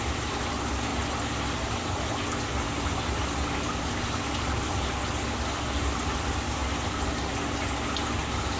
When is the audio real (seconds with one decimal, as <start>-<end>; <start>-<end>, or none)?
0.0-8.6